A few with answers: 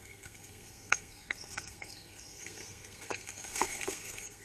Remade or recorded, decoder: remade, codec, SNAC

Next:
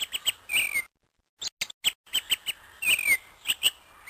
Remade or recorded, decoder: recorded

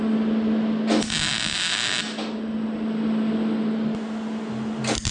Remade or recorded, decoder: recorded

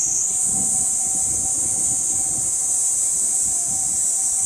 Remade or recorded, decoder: recorded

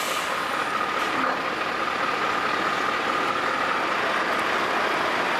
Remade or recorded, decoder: recorded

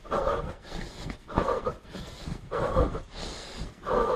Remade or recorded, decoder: remade, codec, SNAC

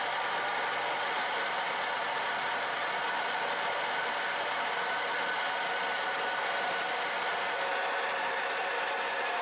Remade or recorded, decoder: recorded